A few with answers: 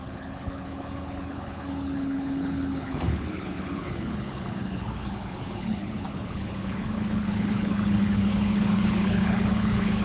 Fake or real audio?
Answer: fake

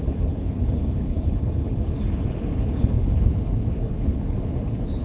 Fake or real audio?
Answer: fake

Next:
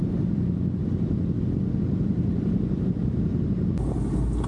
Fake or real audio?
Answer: real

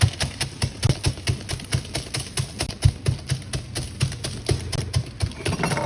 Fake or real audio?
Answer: real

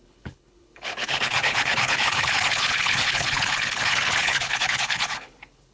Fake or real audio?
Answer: fake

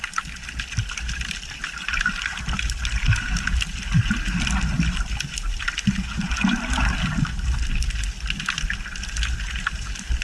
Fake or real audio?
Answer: real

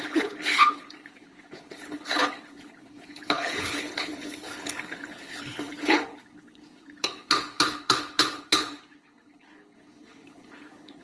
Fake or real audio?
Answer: fake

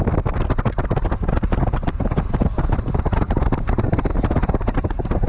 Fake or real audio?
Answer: real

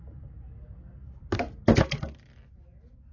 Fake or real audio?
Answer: real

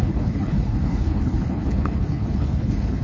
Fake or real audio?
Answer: fake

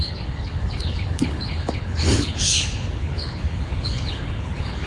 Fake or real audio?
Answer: fake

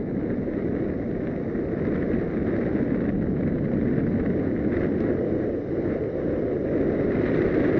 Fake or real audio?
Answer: real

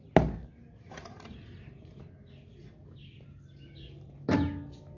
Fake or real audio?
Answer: real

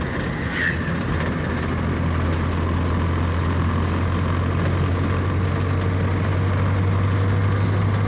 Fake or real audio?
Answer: real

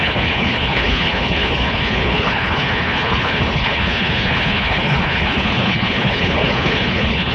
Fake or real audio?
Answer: fake